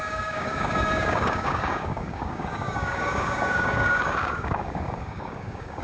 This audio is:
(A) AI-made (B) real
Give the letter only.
A